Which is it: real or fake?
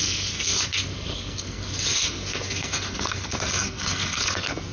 fake